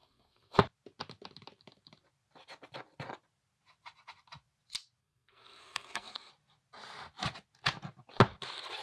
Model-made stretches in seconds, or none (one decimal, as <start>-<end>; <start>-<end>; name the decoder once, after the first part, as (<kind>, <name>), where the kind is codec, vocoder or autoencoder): 0.0-0.6 (codec, SNAC); 5.0-6.3